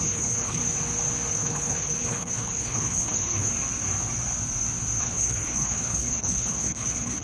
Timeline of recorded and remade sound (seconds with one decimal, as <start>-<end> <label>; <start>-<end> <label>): 0.0-0.6 remade; 0.6-1.3 recorded; 1.3-3.5 remade; 3.5-5.0 recorded; 5.0-7.2 remade